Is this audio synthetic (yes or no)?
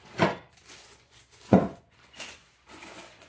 yes